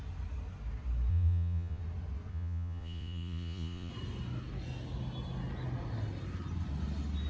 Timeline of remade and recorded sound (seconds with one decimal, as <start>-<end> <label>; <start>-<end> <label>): 0.0-1.1 recorded; 1.1-1.8 remade; 1.8-2.3 recorded; 2.3-3.9 remade; 3.9-7.3 recorded